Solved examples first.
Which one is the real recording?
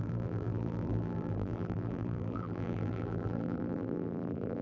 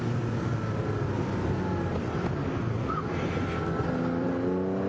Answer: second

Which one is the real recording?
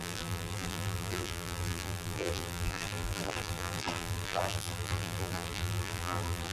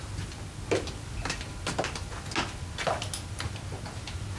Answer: second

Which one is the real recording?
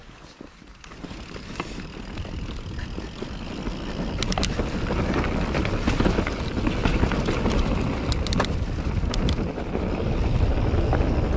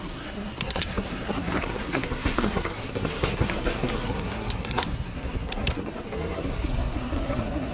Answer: first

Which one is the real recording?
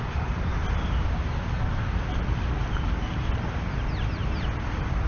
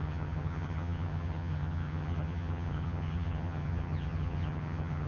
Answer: first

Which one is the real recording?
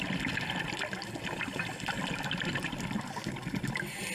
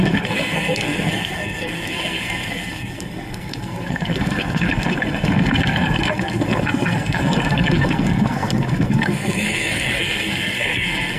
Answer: first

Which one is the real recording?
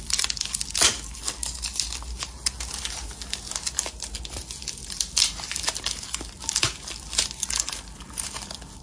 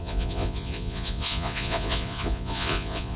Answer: first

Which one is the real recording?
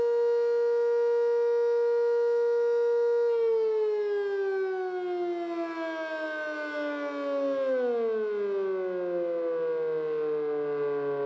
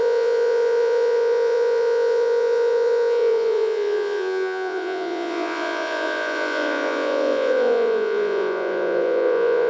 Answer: first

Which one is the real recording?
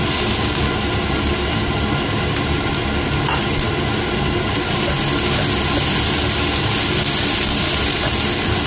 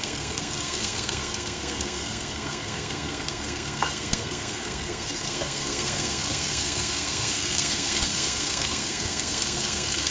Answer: first